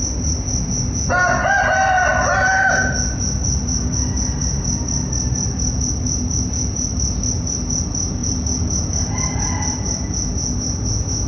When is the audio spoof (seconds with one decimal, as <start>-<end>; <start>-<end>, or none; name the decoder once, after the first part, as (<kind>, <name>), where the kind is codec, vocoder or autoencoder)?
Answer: none